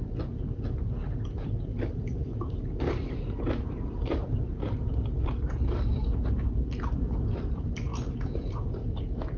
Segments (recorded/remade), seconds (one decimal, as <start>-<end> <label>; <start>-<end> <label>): 0.0-2.2 recorded; 2.2-6.5 remade; 6.5-7.9 recorded; 7.9-9.0 remade; 9.0-9.4 recorded